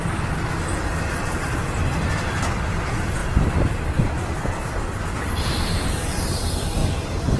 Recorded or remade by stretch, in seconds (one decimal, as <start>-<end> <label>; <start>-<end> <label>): 0.0-3.2 recorded; 3.2-4.8 remade; 4.8-6.8 recorded; 6.8-7.4 remade